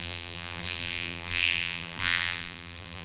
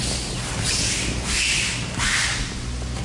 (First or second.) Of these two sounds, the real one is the second